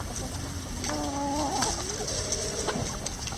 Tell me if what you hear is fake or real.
real